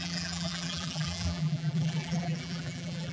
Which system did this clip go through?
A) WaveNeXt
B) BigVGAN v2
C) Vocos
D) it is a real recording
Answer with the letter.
B